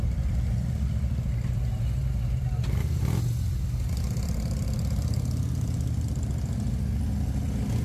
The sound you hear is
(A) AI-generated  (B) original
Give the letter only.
B